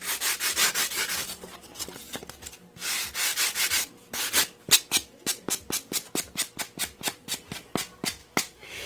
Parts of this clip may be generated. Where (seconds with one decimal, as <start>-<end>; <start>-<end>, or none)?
8.2-8.9